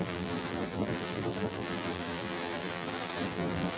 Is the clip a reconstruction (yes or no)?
yes